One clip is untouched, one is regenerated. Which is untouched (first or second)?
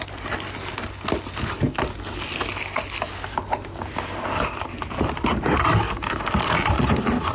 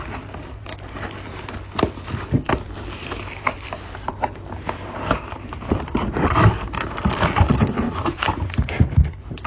first